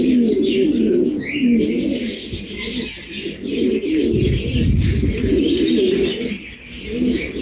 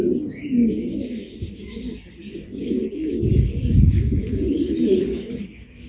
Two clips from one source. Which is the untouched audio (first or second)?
first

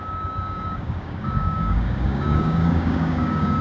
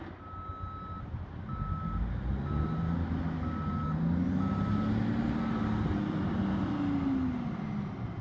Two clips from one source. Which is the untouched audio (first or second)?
second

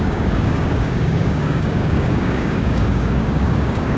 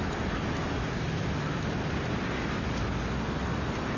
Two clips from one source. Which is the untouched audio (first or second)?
second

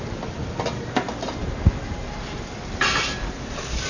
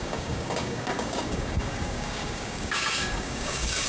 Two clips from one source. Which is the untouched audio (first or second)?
first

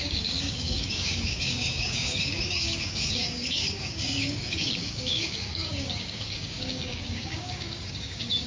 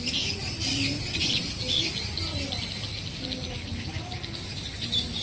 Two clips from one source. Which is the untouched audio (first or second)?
second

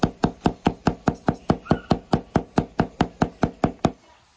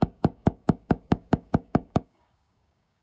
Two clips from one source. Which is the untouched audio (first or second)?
first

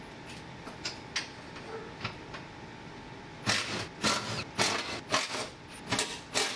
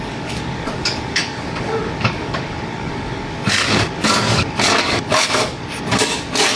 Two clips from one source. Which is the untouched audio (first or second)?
first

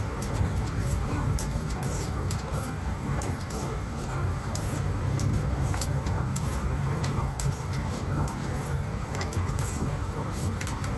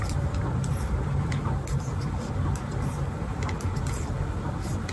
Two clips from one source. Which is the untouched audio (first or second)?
second